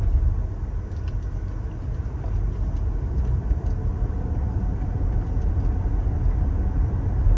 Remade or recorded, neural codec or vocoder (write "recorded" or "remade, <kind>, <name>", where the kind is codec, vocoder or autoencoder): recorded